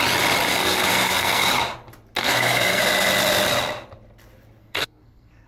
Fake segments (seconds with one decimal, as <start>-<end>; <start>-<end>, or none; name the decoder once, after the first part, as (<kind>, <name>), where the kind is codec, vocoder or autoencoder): 0.5-1.5 (codec, SNAC); 2.2-2.8; 4.6-5.5